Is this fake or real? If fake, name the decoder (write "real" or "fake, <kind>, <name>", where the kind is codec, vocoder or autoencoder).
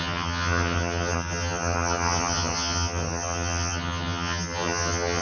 fake, vocoder, HiFi-GAN